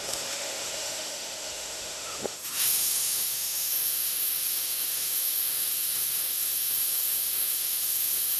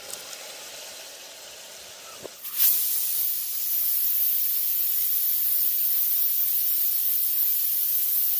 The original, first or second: second